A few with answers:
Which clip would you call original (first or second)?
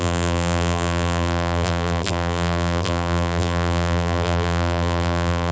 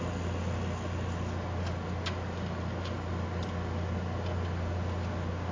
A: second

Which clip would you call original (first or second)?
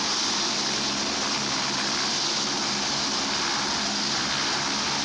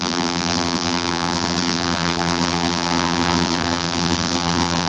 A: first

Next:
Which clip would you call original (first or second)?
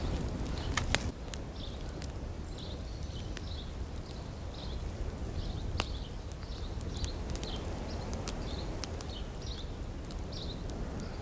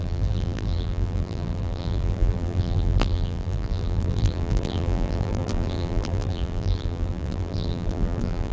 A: first